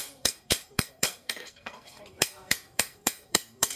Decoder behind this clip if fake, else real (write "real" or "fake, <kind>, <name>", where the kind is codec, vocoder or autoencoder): fake, codec, SNAC